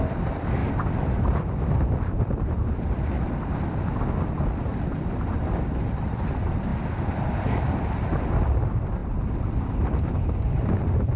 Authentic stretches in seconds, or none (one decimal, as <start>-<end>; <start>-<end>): 0.0-0.6; 3.0-4.7; 6.2-9.0; 9.7-11.2